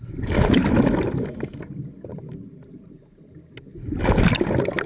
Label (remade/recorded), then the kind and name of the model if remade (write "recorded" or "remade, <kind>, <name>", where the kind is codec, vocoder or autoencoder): recorded